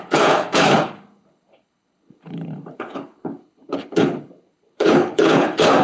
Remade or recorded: remade